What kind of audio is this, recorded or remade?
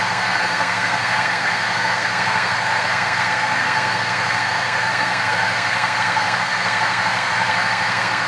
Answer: remade